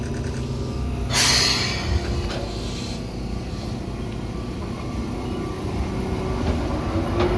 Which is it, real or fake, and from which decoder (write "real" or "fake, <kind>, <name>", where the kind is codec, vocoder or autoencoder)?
real